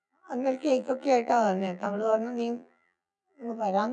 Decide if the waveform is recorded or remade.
remade